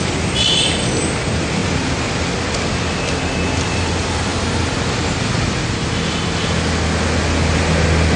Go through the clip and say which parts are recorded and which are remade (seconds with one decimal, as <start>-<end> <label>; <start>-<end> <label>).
0.0-4.3 recorded; 4.3-4.9 remade; 4.9-8.2 recorded